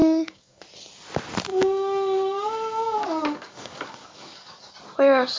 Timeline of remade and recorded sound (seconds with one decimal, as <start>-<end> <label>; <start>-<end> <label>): 0.0-0.6 remade; 0.6-1.5 recorded; 1.5-4.7 remade; 4.7-5.4 recorded